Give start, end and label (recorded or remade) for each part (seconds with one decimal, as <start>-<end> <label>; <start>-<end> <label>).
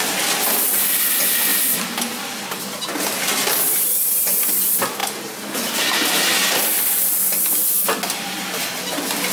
0.0-9.3 recorded